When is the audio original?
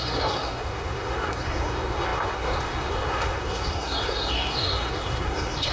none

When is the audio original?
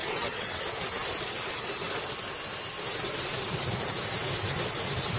0.6-5.2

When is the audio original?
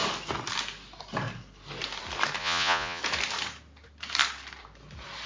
0.0-2.4; 3.0-5.3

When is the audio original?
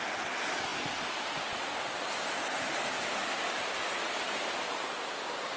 0.0-5.6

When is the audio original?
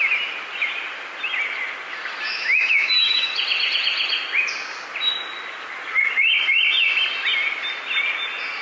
0.0-2.3; 3.3-8.6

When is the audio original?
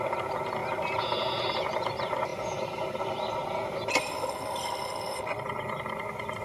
0.0-2.3; 4.2-6.4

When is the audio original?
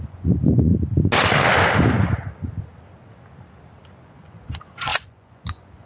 0.7-4.0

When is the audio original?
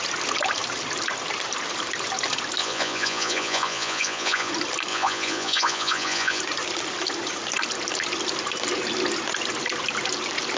0.0-2.6; 4.5-4.9; 6.4-10.6